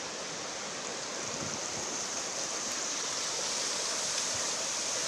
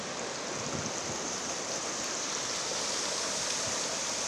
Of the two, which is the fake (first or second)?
first